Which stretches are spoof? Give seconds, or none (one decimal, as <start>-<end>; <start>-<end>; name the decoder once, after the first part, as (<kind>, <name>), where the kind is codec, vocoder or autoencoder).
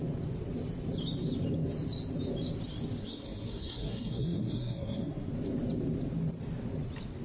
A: 3.0-5.3 (codec, SNAC)